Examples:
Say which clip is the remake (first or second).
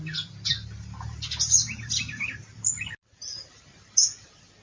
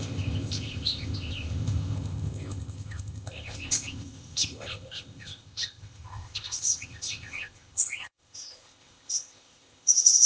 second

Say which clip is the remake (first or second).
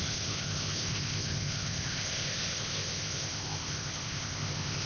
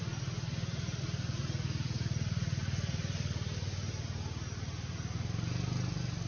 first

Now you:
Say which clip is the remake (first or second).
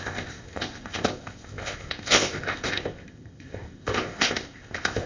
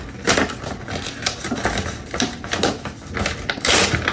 first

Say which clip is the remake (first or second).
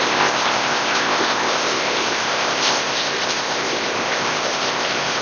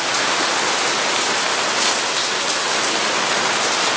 first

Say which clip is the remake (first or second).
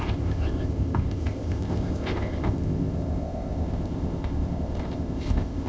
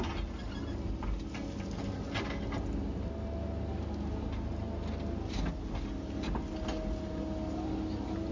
first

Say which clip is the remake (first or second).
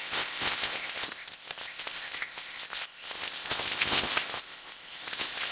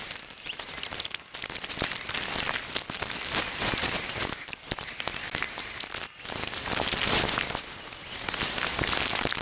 first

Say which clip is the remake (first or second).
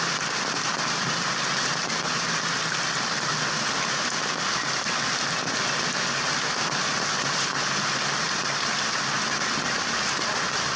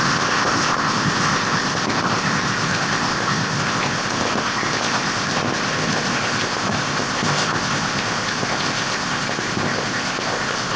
second